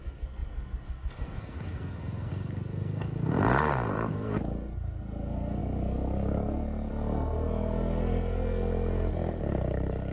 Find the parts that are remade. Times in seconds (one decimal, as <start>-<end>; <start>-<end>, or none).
0.0-10.1